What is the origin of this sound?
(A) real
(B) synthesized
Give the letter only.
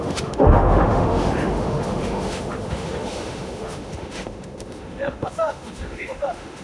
B